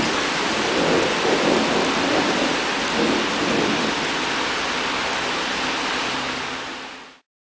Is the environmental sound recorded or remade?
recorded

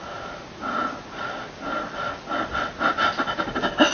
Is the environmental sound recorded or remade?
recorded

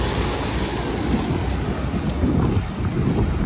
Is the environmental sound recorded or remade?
recorded